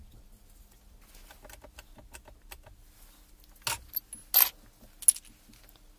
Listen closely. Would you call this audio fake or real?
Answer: real